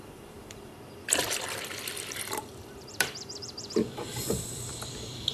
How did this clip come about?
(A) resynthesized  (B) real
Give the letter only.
A